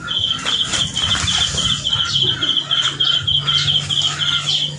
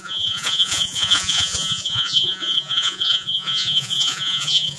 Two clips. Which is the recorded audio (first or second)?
first